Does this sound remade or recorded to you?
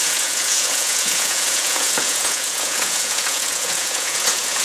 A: remade